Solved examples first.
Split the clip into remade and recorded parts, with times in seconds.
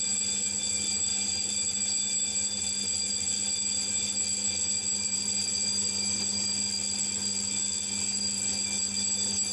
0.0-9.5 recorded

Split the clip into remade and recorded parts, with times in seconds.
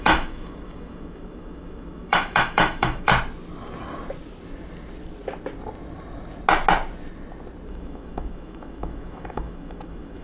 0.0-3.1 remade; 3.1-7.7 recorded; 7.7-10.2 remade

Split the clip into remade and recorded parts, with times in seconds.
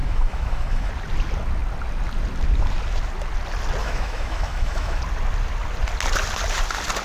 0.0-0.9 remade; 0.9-3.8 recorded; 3.8-5.0 remade; 5.0-7.0 recorded